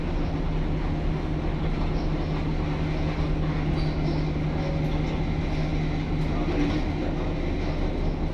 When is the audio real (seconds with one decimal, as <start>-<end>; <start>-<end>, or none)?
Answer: 0.0-8.3